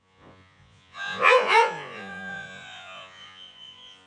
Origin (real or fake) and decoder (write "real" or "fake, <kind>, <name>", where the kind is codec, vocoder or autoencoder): fake, vocoder, Vocos